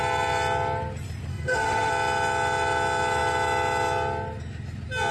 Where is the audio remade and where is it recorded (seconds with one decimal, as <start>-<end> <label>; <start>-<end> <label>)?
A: 0.0-1.3 recorded; 1.3-1.9 remade; 1.9-5.1 recorded